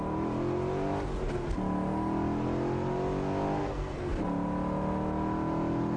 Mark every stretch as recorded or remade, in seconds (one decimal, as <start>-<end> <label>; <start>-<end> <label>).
0.0-3.6 recorded; 3.6-4.1 remade; 4.1-6.0 recorded